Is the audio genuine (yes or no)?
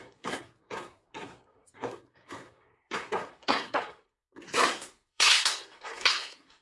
no